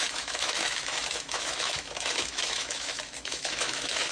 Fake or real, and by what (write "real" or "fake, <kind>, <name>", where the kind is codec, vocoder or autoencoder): fake, autoencoder, DAC-VAE